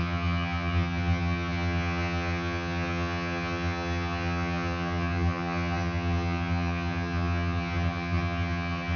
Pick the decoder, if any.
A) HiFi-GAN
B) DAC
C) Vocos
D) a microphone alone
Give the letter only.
A